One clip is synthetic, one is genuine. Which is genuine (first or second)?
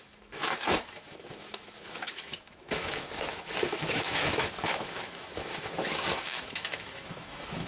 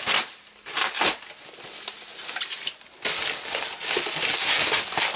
second